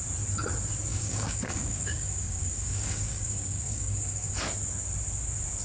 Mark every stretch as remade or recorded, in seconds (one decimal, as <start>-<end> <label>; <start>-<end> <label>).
0.0-0.9 recorded; 0.9-4.3 remade; 4.3-5.6 recorded